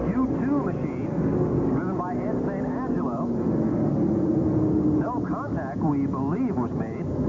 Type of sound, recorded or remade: recorded